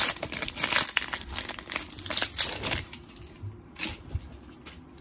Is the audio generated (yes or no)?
no